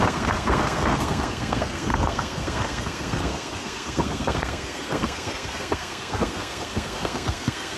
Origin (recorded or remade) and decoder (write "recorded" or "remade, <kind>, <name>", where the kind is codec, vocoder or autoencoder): remade, codec, SNAC